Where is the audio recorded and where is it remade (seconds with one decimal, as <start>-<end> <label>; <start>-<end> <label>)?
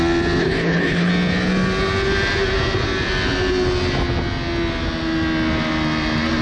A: 0.0-0.4 recorded; 0.4-1.1 remade; 1.1-6.4 recorded